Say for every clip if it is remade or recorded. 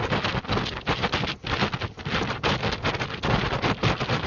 recorded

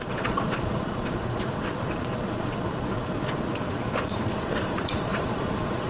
remade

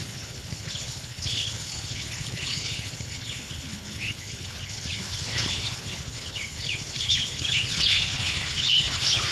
remade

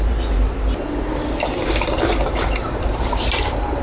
remade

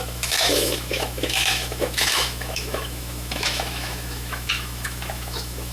remade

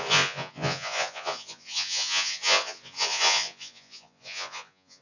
remade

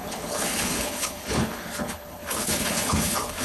remade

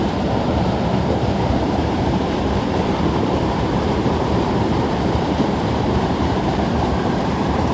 remade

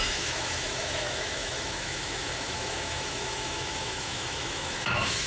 remade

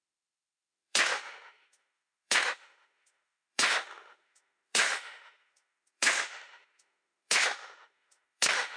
remade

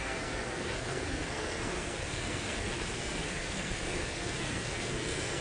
remade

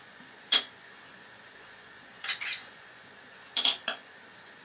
remade